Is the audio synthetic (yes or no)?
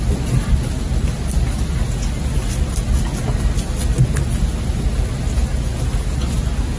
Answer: no